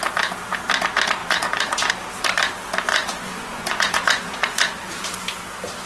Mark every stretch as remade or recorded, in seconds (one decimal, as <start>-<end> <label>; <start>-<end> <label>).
0.0-1.2 recorded; 1.2-1.9 remade; 1.9-2.9 recorded; 2.9-4.9 remade; 4.9-5.9 recorded